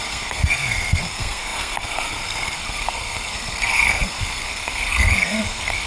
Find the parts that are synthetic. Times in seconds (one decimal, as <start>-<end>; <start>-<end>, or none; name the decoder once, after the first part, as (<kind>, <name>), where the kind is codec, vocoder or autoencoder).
0.0-5.9 (codec, SNAC)